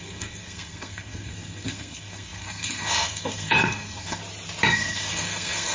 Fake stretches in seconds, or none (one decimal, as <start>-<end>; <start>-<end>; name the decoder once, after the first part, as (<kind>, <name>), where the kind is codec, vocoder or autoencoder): 0.0-4.2 (codec, SNAC); 4.7-5.7

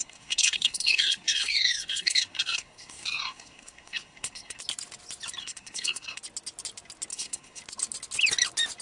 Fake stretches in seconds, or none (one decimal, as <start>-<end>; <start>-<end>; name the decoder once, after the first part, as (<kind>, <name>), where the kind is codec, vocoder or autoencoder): 0.0-4.6 (codec, SNAC); 5.4-6.2; 7.1-7.6

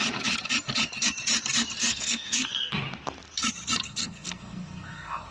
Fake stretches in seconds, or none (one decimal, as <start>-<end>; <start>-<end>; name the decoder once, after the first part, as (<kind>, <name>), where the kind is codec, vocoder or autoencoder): 1.8-2.7 (codec, SNAC); 3.9-5.3

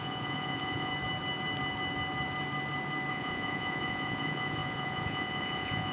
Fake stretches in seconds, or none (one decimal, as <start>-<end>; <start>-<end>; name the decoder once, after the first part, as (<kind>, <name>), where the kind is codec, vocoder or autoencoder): 0.0-0.9 (vocoder, Vocos); 3.1-5.9